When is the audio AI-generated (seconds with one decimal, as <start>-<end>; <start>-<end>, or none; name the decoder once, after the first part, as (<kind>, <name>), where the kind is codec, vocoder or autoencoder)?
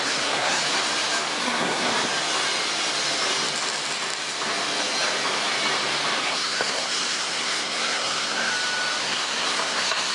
0.0-0.6 (codec, SNAC); 1.4-1.9; 6.2-8.5; 9.0-10.1